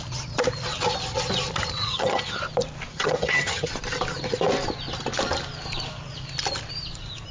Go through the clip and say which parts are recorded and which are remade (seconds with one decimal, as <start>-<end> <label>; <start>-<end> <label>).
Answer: 0.0-1.9 recorded; 1.9-2.4 remade; 2.4-2.9 recorded; 2.9-3.7 remade; 3.7-7.3 recorded